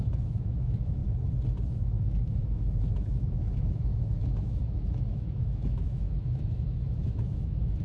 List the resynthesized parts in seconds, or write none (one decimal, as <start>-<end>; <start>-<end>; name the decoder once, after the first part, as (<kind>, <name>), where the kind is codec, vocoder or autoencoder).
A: 0.0-1.0 (autoencoder, DAC-VAE); 1.7-7.8